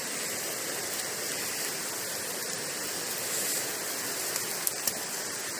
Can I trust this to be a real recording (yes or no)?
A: yes